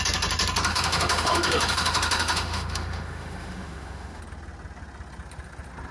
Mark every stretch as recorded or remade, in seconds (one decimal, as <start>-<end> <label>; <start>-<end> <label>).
0.0-0.7 recorded; 0.7-4.2 remade; 4.2-5.9 recorded